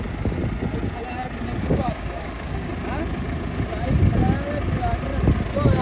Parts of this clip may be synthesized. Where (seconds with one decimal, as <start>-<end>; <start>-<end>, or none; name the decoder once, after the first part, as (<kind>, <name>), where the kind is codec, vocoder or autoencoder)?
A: 0.0-0.4 (codec, DAC); 1.6-2.7